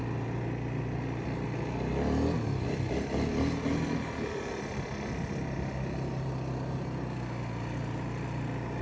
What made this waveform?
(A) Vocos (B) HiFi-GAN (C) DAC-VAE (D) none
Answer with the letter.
D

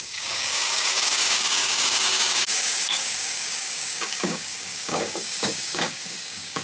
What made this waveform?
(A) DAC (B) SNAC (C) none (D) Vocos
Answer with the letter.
A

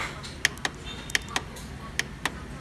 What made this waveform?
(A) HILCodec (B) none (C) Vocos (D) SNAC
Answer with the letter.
B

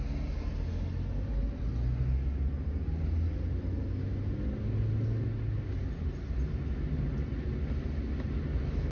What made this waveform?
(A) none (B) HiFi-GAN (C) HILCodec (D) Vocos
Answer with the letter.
A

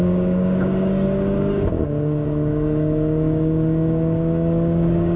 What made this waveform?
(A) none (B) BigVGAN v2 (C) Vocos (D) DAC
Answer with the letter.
D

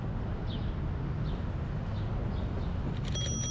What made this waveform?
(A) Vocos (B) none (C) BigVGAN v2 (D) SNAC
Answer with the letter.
B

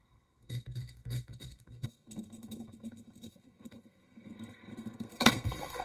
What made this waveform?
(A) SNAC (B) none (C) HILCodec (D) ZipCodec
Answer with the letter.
A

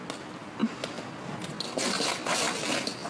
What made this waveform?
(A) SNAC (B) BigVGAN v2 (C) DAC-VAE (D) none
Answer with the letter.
D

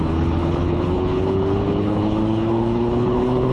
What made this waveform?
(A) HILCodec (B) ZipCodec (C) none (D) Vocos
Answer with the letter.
A